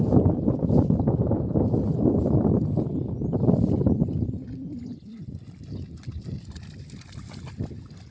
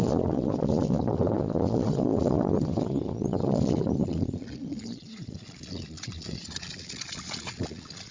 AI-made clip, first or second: second